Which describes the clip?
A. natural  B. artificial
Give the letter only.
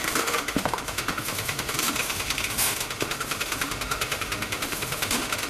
B